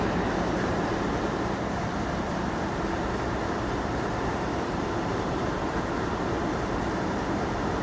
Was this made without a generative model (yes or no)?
no